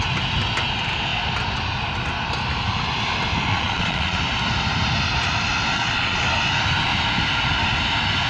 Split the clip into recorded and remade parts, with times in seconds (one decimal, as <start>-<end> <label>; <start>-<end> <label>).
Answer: 0.0-3.5 recorded; 3.5-4.2 remade; 4.2-5.7 recorded; 5.7-6.2 remade; 6.2-8.3 recorded